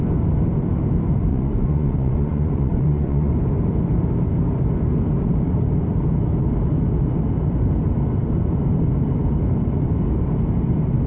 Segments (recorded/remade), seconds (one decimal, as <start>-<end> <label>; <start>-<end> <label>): 0.0-1.3 recorded; 1.3-3.3 remade; 3.3-11.1 recorded